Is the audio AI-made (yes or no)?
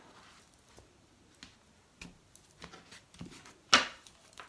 no